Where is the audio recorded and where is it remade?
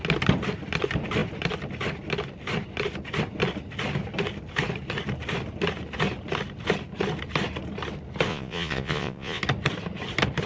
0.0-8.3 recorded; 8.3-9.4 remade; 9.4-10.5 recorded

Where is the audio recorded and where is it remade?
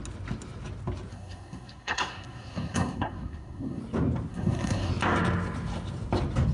0.0-1.1 recorded; 1.1-3.8 remade; 3.8-4.3 recorded; 4.3-4.9 remade; 4.9-6.5 recorded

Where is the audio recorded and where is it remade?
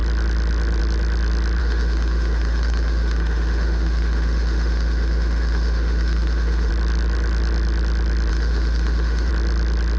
0.0-1.6 recorded; 1.6-6.7 remade; 6.7-8.3 recorded; 8.3-9.3 remade; 9.3-10.0 recorded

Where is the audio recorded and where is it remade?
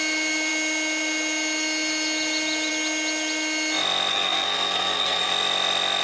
0.0-4.1 recorded; 4.1-5.3 remade; 5.3-6.0 recorded